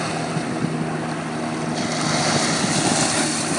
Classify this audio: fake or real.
real